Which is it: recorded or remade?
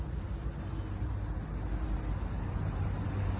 recorded